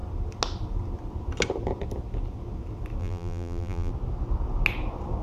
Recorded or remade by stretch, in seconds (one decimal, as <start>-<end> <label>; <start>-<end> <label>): 0.0-3.0 recorded; 3.0-3.9 remade; 3.9-5.2 recorded